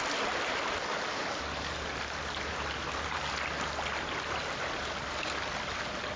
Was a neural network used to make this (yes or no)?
no